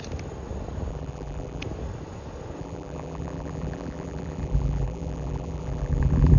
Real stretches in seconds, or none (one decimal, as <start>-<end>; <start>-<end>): 0.0-0.9; 1.6-2.6